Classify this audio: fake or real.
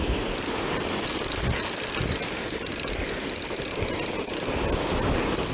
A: real